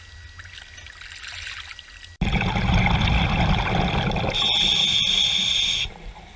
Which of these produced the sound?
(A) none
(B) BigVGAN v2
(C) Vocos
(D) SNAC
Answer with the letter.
A